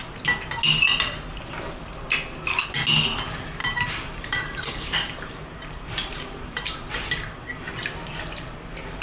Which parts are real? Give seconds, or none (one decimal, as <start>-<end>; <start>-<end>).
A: 0.0-3.6; 6.9-9.0